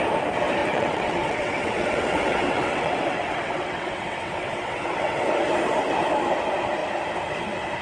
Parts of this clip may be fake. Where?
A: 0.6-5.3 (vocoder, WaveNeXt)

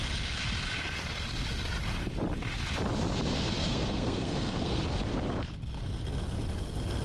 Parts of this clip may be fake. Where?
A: 3.6-4.8 (codec, SNAC)

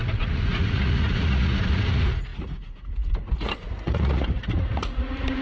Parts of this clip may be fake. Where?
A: 0.0-5.4 (vocoder, Vocos)